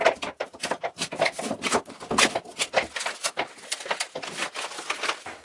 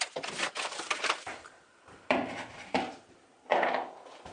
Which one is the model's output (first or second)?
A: second